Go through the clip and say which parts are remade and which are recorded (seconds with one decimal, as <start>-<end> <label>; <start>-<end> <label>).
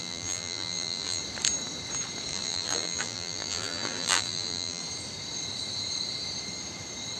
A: 0.0-1.2 remade; 1.2-2.3 recorded; 2.3-4.8 remade; 4.8-7.2 recorded